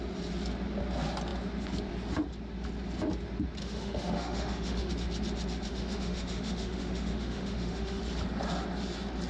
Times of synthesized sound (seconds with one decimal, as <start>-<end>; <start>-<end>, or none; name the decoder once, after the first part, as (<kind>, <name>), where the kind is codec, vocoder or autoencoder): 3.6-4.9 (autoencoder, DAC-VAE); 5.7-8.0